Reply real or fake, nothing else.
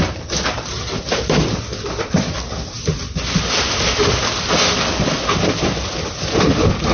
real